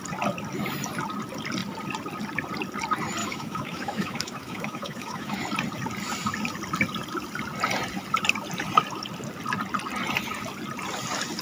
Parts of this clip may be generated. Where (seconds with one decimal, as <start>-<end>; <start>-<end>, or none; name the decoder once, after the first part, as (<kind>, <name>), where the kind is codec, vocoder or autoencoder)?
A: 3.2-5.4 (autoencoder, DAC-VAE)